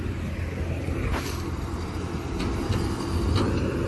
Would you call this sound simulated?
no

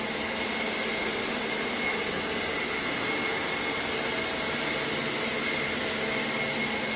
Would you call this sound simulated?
no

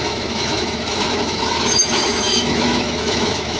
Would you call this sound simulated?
yes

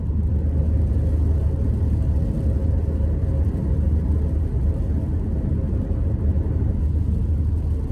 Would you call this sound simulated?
no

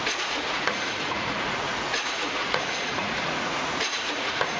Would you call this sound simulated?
yes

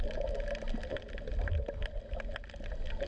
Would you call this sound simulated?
no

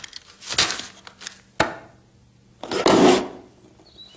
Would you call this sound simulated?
no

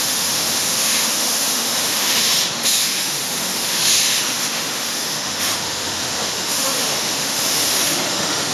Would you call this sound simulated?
yes